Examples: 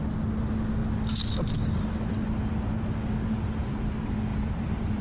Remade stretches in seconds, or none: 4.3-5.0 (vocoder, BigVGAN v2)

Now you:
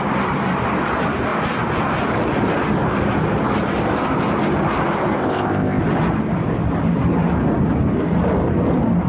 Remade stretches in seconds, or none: 5.2-5.8 (codec, ZipCodec)

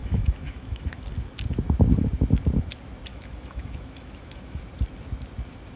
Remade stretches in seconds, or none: 0.0-1.0 (autoencoder, DAC-VAE); 3.1-4.6

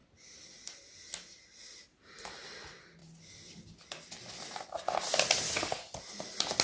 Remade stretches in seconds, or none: none

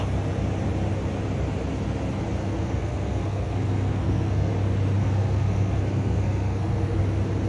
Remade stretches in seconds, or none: 2.4-4.5 (codec, SNAC); 5.0-7.0